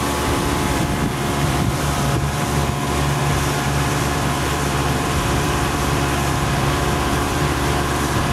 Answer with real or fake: fake